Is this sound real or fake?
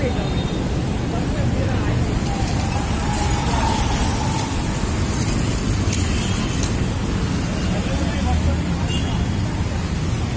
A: real